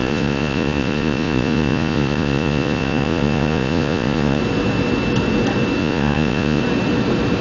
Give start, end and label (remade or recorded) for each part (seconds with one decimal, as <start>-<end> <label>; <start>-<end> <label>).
0.0-4.4 remade; 4.4-5.8 recorded; 5.8-6.6 remade; 6.6-7.4 recorded